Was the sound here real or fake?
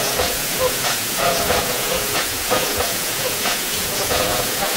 fake